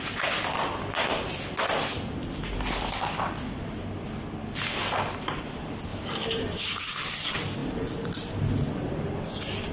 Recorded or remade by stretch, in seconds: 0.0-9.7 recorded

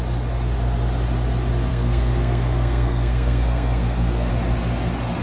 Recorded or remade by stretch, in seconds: 0.0-1.7 recorded; 1.7-4.3 remade; 4.3-5.2 recorded

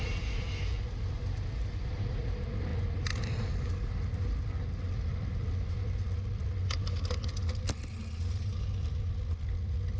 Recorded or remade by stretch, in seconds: 0.0-10.0 recorded